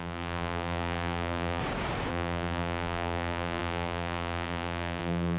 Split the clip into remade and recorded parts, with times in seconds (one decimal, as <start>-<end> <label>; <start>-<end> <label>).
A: 0.0-1.6 remade; 1.6-2.1 recorded; 2.1-5.4 remade